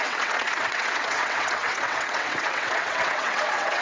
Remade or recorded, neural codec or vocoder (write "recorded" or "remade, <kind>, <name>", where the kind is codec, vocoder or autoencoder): remade, vocoder, WaveNeXt